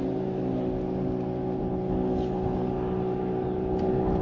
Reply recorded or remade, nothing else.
recorded